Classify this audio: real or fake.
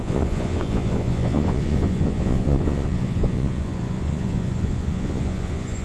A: fake